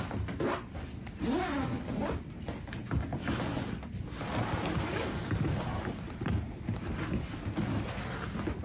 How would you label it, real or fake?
real